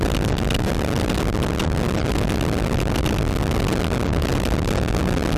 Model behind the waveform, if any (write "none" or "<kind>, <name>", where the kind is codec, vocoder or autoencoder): none